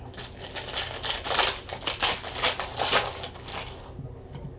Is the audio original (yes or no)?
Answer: yes